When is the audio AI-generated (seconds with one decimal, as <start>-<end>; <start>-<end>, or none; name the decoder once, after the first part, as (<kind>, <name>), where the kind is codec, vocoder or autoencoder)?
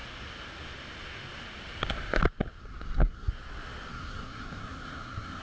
2.6-3.3 (codec, SNAC); 3.9-5.4